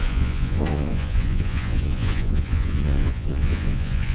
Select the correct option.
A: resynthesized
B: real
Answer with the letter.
A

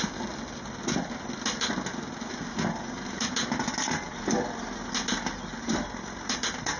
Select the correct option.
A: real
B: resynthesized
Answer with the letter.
A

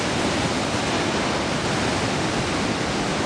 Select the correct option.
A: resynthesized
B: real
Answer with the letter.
B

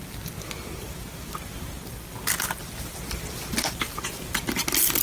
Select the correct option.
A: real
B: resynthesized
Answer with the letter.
A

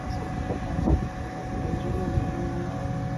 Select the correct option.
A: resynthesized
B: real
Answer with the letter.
B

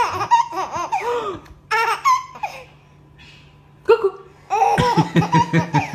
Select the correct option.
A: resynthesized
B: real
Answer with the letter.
B